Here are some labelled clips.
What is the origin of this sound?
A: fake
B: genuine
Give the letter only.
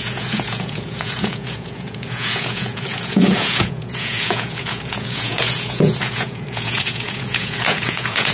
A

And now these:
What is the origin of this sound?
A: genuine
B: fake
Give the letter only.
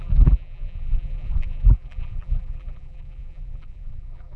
B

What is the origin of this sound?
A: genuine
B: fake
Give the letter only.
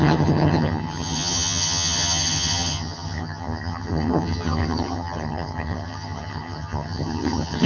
B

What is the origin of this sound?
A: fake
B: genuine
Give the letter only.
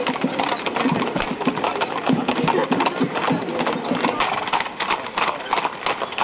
B